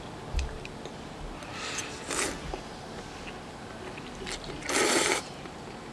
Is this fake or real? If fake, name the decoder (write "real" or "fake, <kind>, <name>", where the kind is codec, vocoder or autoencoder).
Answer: real